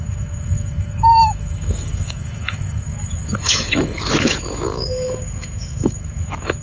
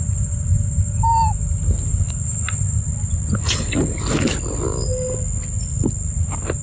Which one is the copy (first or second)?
first